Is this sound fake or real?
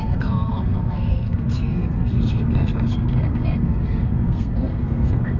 fake